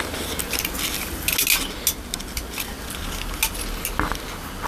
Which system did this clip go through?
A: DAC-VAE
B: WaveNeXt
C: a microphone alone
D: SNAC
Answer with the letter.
C